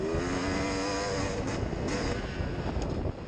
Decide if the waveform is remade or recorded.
recorded